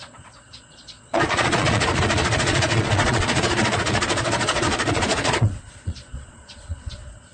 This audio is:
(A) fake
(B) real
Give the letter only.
A